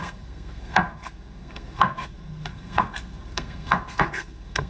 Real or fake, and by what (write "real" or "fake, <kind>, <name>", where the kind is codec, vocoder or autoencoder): fake, codec, SNAC